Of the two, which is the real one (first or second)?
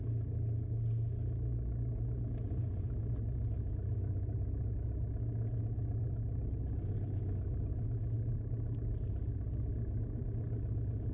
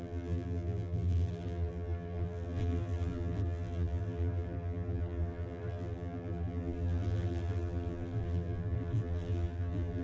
first